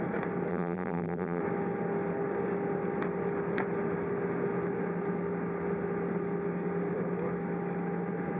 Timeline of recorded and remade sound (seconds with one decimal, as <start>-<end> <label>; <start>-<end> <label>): 0.0-0.5 recorded; 0.5-1.4 remade; 1.4-8.4 recorded